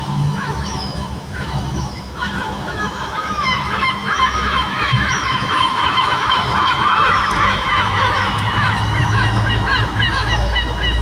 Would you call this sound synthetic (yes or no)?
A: yes